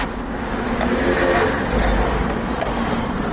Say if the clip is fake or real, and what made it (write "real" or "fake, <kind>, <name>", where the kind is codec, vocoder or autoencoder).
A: real